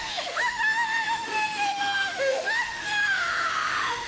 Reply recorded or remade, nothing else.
remade